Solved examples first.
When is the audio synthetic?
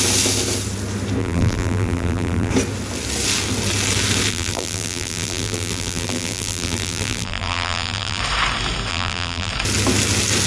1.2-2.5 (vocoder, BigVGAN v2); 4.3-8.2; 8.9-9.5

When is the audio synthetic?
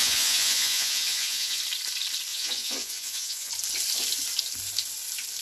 0.0-1.6 (vocoder, Vocos); 2.3-3.5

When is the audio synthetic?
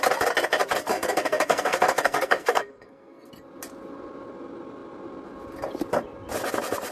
0.9-3.3 (codec, SNAC)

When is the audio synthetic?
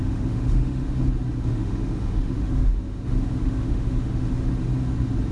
0.0-1.0 (autoencoder, DAC-VAE); 1.5-4.5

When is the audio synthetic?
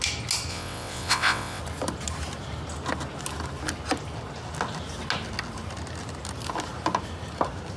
0.5-1.6 (vocoder, WaveNeXt)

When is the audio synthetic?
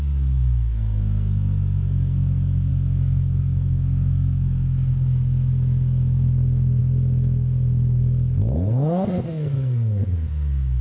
0.0-10.8 (codec, SNAC)